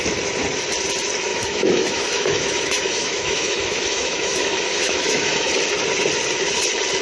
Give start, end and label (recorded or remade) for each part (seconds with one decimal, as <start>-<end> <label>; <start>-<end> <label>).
0.0-1.3 recorded; 1.3-5.5 remade; 5.5-7.0 recorded